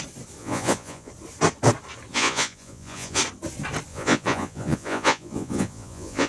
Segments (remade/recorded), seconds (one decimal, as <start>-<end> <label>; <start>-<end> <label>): 0.0-0.4 recorded; 0.4-1.1 remade; 1.1-2.1 recorded; 2.1-3.2 remade; 3.2-3.9 recorded; 3.9-6.3 remade